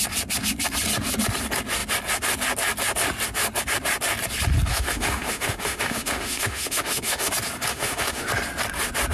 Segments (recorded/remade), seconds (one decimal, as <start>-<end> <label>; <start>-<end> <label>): 0.0-4.7 recorded; 4.7-7.3 remade; 7.3-7.7 recorded; 7.7-8.3 remade; 8.3-9.1 recorded